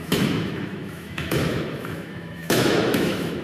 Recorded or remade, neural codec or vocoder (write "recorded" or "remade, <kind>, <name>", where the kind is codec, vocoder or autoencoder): remade, autoencoder, DAC-VAE